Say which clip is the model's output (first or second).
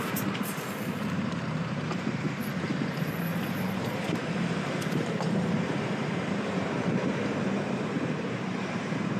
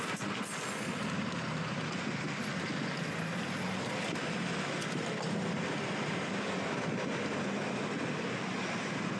first